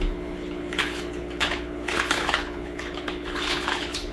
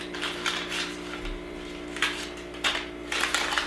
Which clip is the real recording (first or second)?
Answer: second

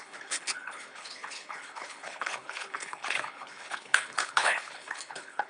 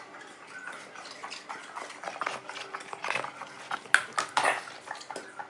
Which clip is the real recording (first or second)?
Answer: second